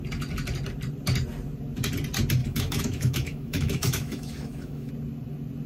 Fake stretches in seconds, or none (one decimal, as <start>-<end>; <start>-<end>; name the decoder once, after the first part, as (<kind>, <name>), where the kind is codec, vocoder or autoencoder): 2.4-4.9 (autoencoder, DAC-VAE)

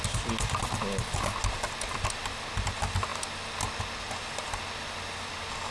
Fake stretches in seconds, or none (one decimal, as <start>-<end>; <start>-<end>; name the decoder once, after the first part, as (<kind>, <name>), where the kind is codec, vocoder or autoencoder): none

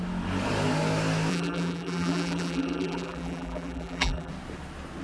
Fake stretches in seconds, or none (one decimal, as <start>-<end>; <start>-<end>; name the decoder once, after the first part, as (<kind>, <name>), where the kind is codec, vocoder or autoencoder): 1.3-4.3 (vocoder, BigVGAN v2)

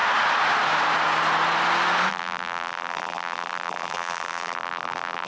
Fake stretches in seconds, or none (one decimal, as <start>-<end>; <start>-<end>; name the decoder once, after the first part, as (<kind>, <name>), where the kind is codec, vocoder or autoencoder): 2.1-5.3 (vocoder, BigVGAN v2)

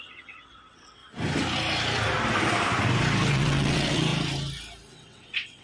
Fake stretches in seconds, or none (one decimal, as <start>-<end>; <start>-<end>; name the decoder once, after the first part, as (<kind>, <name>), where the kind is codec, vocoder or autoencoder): 0.0-1.0 (vocoder, WaveNeXt); 3.3-4.1; 4.9-5.6

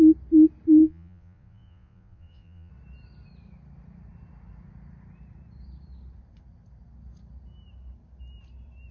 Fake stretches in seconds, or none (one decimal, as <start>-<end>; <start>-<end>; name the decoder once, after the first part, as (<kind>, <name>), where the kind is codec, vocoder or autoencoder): 0.8-2.7 (vocoder, Vocos)

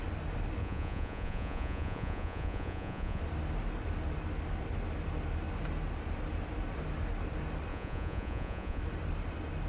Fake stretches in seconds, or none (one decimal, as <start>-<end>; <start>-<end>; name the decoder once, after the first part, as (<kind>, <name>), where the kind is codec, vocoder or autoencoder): 0.6-3.2 (vocoder, Vocos); 7.7-8.8